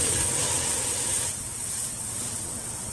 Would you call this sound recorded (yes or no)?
no